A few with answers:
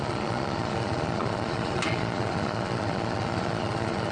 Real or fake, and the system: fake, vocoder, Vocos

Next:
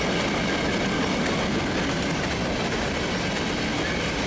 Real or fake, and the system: real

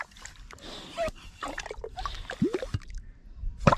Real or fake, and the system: real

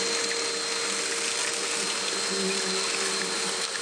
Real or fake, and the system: real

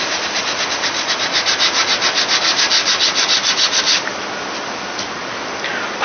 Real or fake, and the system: real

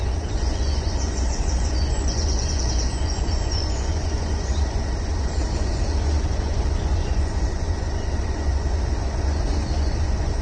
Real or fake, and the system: fake, vocoder, Vocos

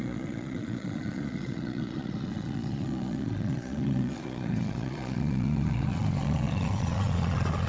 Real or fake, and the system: fake, vocoder, Vocos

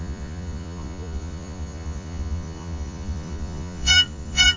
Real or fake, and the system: fake, vocoder, Vocos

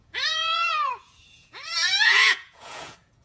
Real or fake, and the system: fake, vocoder, Vocos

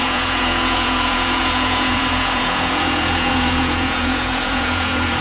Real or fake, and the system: fake, vocoder, Vocos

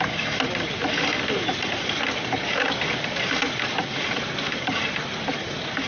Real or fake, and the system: real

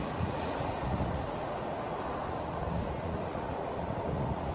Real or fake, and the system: fake, vocoder, Vocos